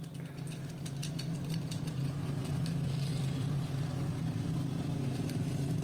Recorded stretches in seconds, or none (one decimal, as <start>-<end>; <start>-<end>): 0.0-1.0; 2.5-3.1; 3.6-5.8